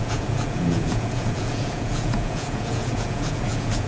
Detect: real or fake fake